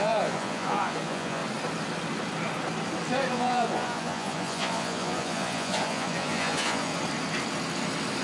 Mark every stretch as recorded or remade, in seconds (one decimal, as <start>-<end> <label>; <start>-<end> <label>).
0.0-1.4 remade; 1.4-3.3 recorded; 3.3-6.9 remade; 6.9-8.2 recorded